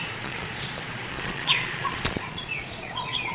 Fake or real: fake